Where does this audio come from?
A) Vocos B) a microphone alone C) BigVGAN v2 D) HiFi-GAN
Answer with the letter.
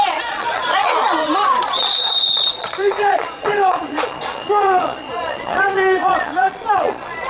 A